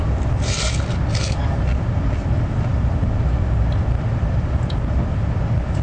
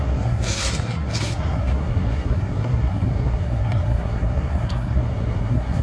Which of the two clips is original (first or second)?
first